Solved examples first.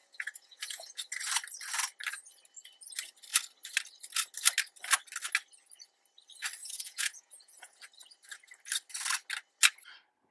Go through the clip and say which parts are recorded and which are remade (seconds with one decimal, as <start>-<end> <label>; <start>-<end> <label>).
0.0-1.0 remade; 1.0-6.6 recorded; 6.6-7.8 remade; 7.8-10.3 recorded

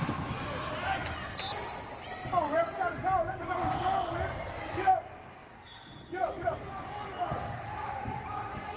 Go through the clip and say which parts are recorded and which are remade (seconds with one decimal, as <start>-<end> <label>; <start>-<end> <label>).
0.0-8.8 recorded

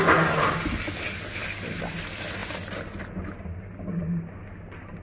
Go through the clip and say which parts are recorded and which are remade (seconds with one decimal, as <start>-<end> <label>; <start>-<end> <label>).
0.0-5.0 recorded

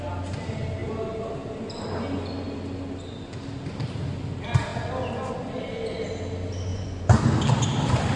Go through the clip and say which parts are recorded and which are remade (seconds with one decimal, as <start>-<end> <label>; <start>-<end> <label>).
0.0-6.7 recorded; 6.7-7.2 remade; 7.2-8.2 recorded

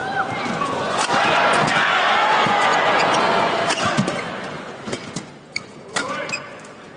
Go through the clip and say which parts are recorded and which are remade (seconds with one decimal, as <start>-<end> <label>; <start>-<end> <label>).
0.0-0.6 recorded; 0.6-7.0 remade

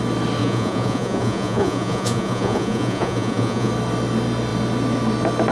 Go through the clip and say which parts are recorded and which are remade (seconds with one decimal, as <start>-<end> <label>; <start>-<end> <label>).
0.0-0.4 recorded; 0.4-3.7 remade; 3.7-5.5 recorded

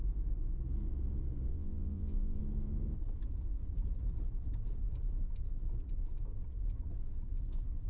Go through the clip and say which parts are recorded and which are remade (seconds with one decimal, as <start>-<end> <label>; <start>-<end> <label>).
0.0-1.5 recorded; 1.5-2.4 remade; 2.4-7.9 recorded